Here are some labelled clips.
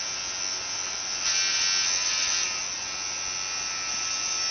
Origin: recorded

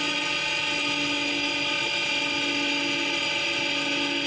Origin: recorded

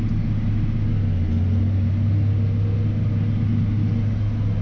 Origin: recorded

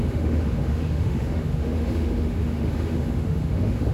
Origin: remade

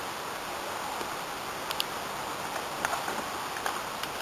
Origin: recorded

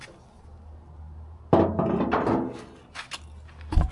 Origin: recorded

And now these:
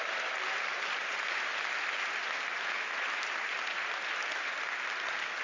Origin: recorded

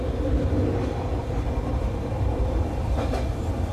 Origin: recorded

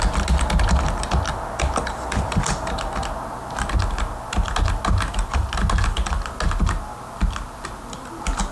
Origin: recorded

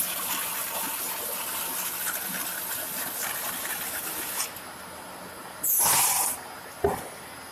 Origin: recorded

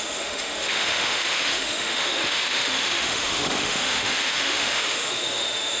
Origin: remade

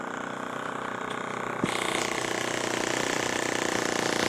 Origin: recorded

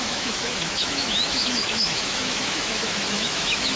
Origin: remade